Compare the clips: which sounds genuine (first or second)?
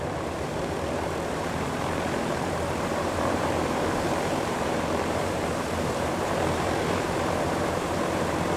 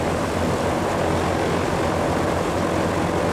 second